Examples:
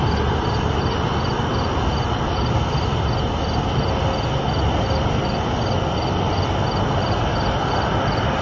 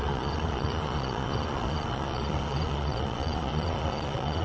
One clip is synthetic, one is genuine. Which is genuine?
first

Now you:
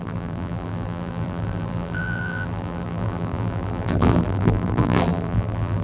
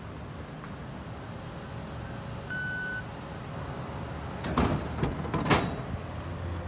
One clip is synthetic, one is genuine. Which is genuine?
second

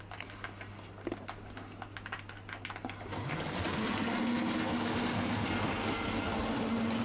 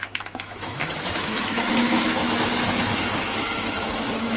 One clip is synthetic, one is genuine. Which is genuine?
first